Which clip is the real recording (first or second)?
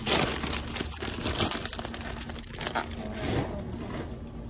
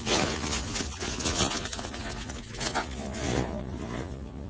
first